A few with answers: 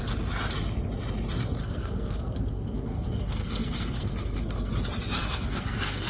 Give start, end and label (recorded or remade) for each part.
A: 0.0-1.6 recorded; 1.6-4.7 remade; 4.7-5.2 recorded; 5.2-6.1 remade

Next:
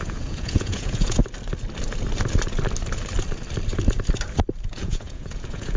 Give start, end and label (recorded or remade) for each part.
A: 0.0-1.2 remade; 1.2-4.7 recorded; 4.7-5.8 remade